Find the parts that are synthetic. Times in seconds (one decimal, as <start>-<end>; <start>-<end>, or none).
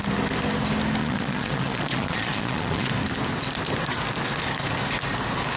1.0-2.9